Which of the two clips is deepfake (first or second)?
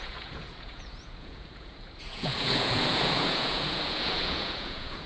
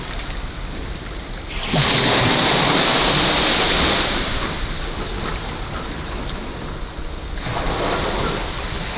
first